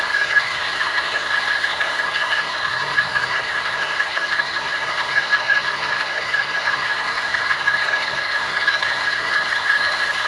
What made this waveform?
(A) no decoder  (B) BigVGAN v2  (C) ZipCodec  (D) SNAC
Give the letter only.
D